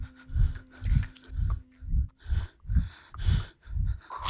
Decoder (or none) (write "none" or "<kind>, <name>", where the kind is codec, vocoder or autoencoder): none